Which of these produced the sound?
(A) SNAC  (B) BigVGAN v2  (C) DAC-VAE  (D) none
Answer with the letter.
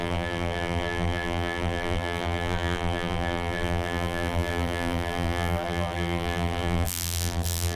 B